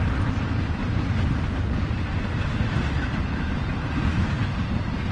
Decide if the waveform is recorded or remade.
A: remade